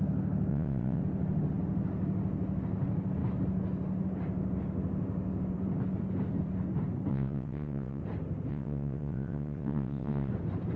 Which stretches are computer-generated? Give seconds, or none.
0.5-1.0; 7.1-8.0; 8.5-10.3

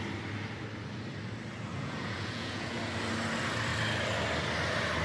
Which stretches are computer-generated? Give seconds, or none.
1.7-2.8

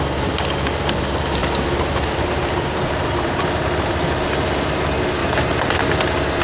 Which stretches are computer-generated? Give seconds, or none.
1.4-4.1; 5.2-5.8

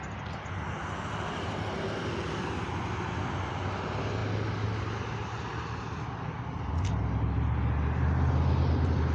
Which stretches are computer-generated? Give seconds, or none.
none